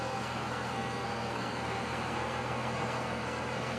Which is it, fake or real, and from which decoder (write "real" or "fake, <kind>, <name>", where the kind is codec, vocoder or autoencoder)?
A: fake, codec, SNAC